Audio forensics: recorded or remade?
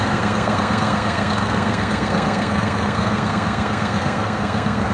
remade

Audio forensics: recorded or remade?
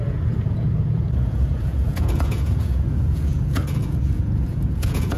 remade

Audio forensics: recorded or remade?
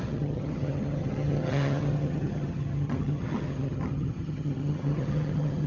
remade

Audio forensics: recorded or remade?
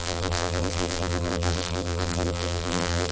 remade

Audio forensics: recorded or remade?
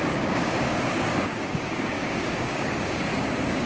remade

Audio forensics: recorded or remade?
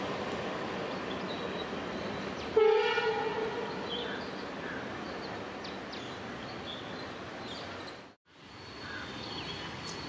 recorded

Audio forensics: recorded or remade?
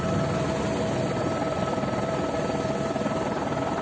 remade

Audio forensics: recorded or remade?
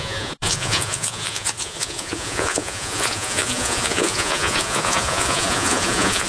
remade